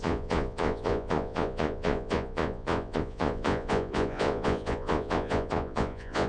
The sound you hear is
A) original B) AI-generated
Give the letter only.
B